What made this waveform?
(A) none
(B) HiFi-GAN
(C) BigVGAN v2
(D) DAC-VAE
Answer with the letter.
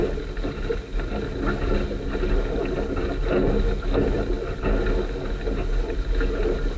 A